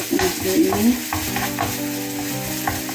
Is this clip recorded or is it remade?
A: recorded